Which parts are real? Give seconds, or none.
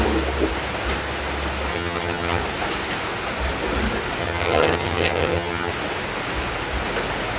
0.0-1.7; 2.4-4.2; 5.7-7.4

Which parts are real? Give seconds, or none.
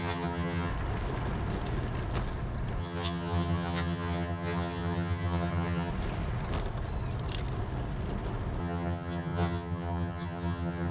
0.7-2.8; 5.9-8.6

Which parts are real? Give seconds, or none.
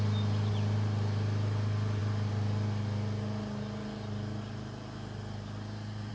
0.0-6.1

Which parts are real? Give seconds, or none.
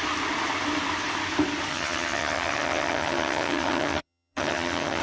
0.0-1.7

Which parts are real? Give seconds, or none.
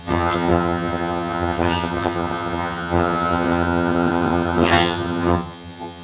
none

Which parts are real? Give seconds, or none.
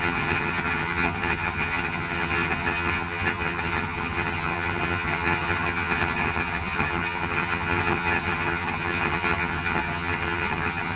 none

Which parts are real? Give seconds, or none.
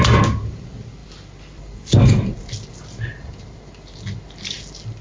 0.0-5.0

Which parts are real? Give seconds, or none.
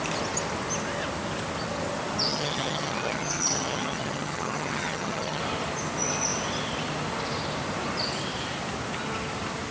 0.0-2.3; 5.4-9.7